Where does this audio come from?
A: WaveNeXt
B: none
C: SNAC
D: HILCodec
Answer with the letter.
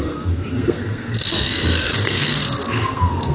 C